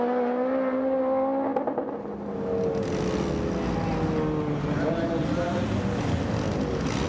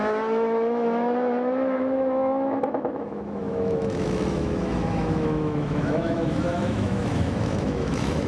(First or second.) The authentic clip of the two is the first